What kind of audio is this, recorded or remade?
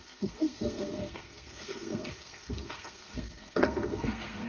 remade